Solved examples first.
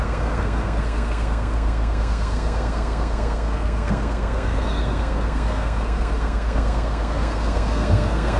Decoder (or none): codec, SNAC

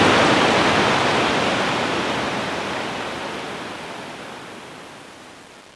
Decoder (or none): none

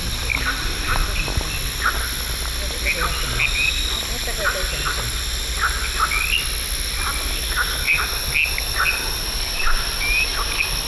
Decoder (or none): none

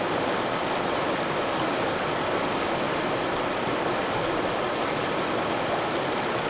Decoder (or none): none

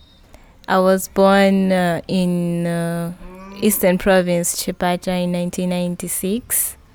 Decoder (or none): none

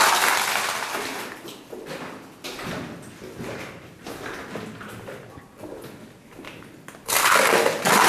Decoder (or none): none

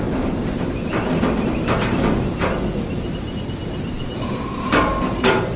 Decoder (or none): none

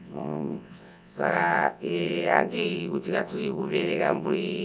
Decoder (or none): vocoder, WaveNeXt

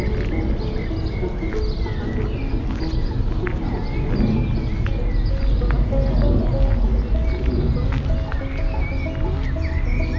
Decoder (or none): none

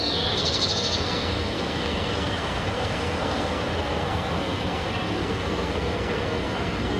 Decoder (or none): codec, SNAC